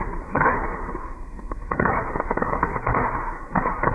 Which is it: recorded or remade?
remade